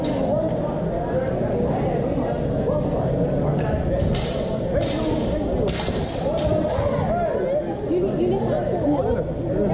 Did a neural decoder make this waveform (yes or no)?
no